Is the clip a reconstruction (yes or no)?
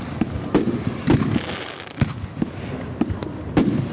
no